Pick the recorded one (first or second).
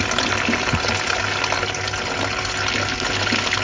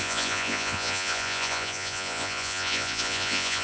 first